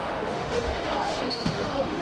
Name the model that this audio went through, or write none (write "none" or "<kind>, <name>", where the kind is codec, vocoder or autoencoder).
autoencoder, DAC-VAE